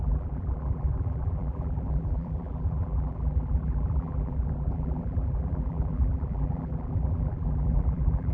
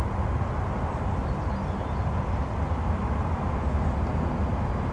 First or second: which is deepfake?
first